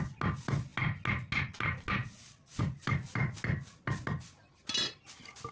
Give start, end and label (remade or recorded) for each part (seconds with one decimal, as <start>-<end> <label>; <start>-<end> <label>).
0.0-2.0 recorded; 2.0-2.6 remade; 2.6-5.5 recorded